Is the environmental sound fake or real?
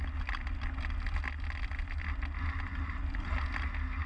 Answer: real